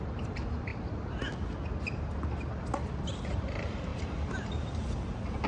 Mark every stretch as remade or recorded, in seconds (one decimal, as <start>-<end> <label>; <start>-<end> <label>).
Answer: 0.0-0.7 remade; 0.7-3.2 recorded; 3.2-3.9 remade; 3.9-4.9 recorded; 4.9-5.5 remade

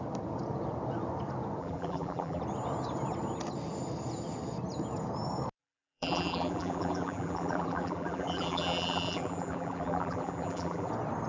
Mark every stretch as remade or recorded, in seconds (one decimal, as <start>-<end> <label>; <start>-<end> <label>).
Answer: 0.0-1.6 recorded; 1.6-2.4 remade; 2.4-5.6 recorded; 5.6-10.9 remade; 10.9-11.3 recorded

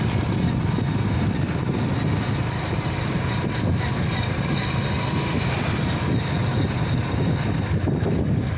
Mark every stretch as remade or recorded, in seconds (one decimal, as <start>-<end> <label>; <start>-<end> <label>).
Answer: 0.0-2.4 recorded; 2.4-4.4 remade; 4.4-8.6 recorded

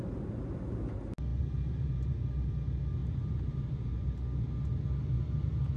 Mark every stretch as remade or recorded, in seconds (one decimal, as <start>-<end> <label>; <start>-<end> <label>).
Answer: 0.0-1.3 recorded; 1.3-2.5 remade; 2.5-3.0 recorded; 3.0-3.9 remade; 3.9-5.8 recorded